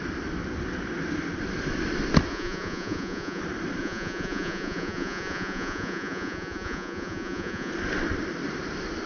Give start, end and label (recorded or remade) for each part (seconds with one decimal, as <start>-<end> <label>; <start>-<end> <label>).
0.0-2.3 recorded; 2.3-3.4 remade; 3.4-3.8 recorded; 3.8-7.7 remade; 7.7-9.1 recorded

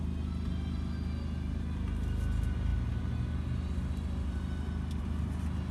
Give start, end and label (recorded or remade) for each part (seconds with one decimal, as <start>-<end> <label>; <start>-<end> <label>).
0.0-5.7 recorded

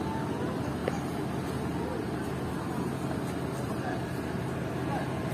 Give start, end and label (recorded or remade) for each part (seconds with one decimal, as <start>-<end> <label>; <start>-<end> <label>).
0.0-5.3 recorded

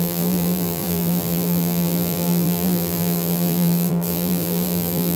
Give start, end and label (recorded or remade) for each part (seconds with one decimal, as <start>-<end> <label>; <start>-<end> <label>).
0.0-5.2 remade